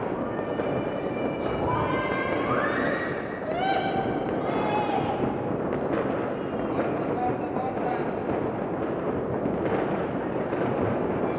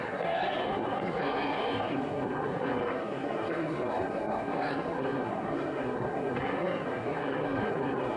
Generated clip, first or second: second